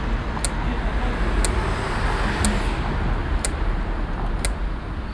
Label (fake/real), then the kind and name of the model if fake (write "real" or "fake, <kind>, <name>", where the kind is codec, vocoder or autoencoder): real